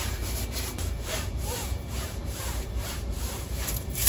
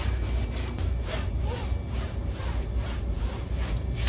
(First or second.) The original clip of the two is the second